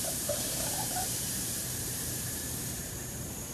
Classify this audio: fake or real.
fake